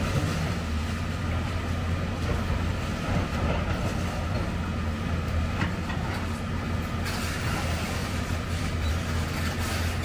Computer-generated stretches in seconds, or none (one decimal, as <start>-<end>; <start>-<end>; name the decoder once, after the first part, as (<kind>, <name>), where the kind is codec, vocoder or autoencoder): 4.7-6.0 (vocoder, BigVGAN v2); 8.0-8.9